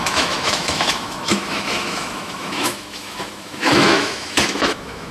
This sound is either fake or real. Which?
fake